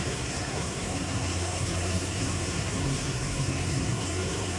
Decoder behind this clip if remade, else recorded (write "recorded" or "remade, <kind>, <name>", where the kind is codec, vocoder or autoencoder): remade, codec, SNAC